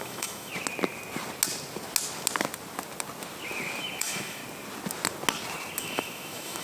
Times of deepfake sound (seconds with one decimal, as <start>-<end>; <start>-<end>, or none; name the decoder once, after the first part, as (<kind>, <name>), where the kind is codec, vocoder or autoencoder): 0.0-0.5 (autoencoder, DAC-VAE); 4.0-4.4; 5.8-6.6